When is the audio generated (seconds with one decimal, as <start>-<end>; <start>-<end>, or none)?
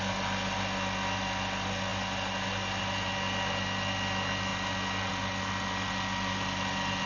none